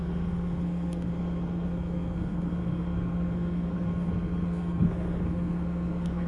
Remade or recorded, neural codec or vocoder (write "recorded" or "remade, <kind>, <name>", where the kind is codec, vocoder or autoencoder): remade, codec, SNAC